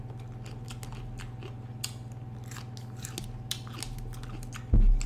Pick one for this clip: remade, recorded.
recorded